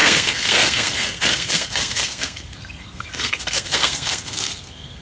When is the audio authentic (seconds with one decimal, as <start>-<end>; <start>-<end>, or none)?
none